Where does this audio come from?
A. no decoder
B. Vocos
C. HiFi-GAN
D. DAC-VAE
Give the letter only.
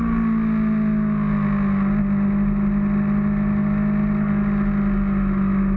A